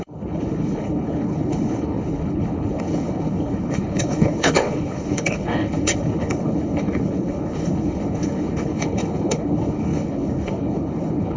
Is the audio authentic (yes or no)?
no